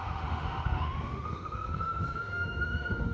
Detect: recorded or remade remade